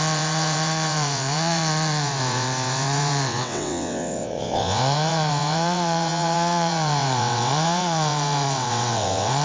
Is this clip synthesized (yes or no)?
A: yes